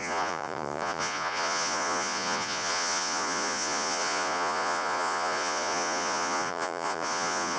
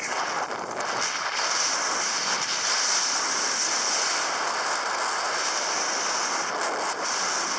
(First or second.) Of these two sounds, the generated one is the first